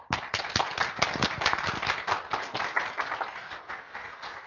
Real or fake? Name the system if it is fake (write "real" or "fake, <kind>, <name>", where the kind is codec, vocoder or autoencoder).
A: real